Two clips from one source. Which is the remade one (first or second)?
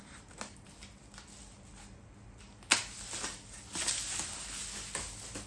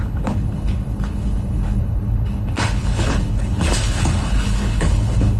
second